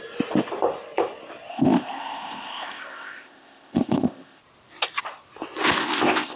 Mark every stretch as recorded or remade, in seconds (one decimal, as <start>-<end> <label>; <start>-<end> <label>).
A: 0.0-1.5 recorded; 1.5-4.4 remade; 4.4-5.8 recorded; 5.8-6.4 remade

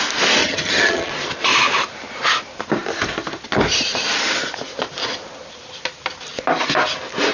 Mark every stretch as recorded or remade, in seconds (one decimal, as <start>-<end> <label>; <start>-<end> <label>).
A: 0.0-0.4 recorded; 0.4-1.1 remade; 1.1-7.3 recorded

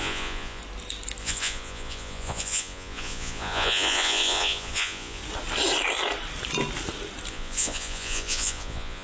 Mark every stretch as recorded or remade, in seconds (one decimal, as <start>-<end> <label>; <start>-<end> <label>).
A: 0.0-0.6 remade; 0.6-1.2 recorded; 1.2-5.2 remade; 5.2-7.3 recorded; 7.3-9.0 remade

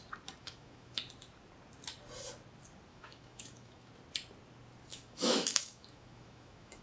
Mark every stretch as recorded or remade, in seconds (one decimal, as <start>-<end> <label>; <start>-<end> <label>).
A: 0.0-0.4 recorded; 0.4-1.0 remade; 1.0-2.9 recorded; 2.9-3.9 remade; 3.9-4.9 recorded; 4.9-6.8 remade

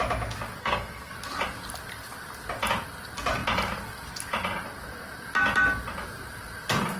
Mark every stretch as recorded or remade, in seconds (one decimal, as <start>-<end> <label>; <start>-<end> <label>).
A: 0.0-0.6 recorded; 0.6-1.1 remade; 1.1-7.0 recorded